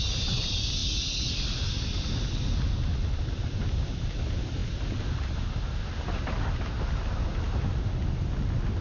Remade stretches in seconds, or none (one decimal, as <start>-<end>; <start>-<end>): none